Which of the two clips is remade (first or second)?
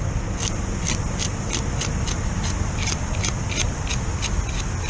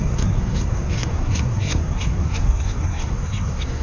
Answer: second